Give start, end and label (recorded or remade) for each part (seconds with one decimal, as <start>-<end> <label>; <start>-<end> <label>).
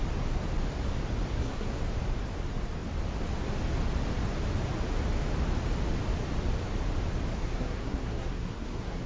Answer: 0.0-1.3 recorded; 1.3-1.8 remade; 1.8-7.3 recorded; 7.3-9.1 remade